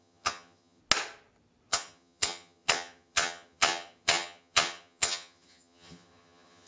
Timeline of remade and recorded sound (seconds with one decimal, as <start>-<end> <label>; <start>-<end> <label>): 0.0-0.8 remade; 0.8-1.7 recorded; 1.7-6.7 remade